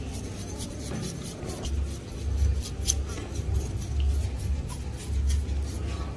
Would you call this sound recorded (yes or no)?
yes